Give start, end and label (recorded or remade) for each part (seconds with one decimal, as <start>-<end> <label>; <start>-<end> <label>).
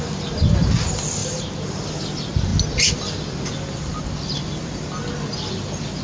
0.0-6.0 recorded